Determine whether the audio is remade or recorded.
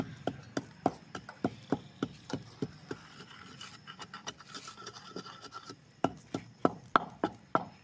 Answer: recorded